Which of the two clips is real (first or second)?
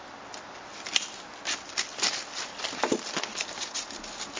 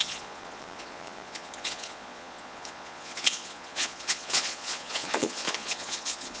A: first